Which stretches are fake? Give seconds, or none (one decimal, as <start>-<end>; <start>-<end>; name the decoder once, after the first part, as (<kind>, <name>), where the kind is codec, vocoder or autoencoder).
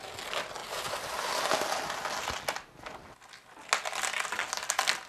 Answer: none